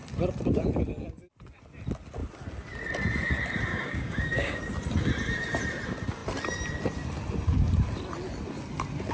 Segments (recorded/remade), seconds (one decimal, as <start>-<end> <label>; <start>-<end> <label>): 0.0-3.7 recorded; 3.7-4.7 remade; 4.7-9.1 recorded